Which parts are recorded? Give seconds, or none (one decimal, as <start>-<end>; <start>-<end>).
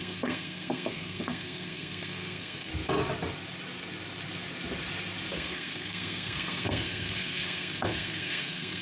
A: 2.7-5.3